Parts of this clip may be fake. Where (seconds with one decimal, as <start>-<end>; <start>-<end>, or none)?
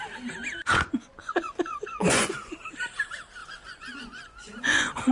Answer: 0.7-2.5; 3.4-5.1